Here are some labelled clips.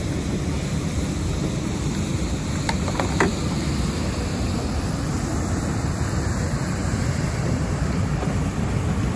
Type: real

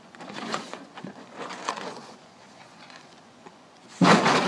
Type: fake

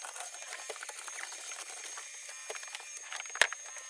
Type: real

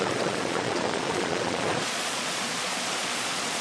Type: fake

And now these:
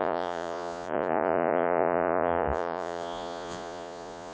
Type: fake